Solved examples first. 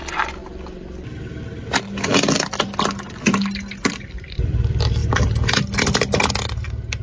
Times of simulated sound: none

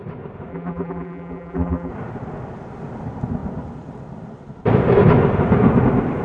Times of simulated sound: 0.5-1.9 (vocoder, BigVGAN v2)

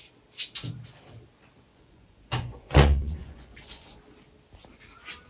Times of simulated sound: 1.7-4.0 (vocoder, Vocos)

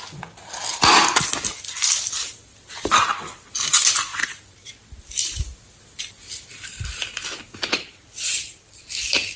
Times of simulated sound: none

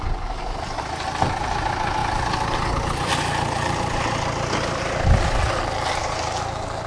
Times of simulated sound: 2.0-5.6 (vocoder, BigVGAN v2)

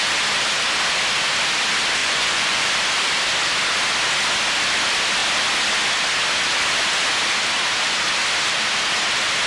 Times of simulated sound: 2.0-2.7 (vocoder, Vocos)

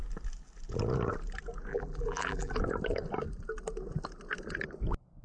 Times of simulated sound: 1.7-2.5 (vocoder, BigVGAN v2)